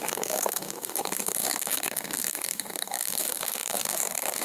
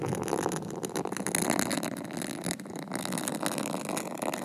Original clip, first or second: second